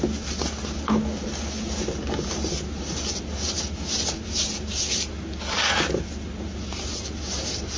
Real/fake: real